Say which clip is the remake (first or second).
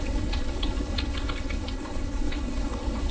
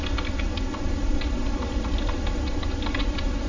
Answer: first